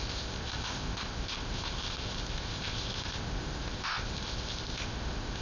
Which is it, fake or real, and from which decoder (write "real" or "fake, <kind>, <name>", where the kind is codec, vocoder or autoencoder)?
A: fake, codec, ZipCodec